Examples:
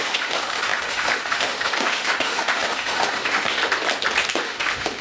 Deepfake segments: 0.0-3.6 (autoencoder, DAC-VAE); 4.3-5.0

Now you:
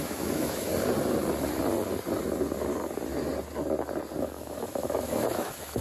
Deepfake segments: 0.0-0.7 (autoencoder, DAC-VAE); 4.2-5.8